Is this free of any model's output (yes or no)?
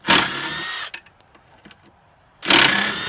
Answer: yes